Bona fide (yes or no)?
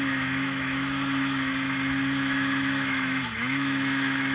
no